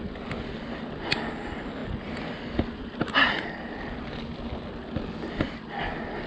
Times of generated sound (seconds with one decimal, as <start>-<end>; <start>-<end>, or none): none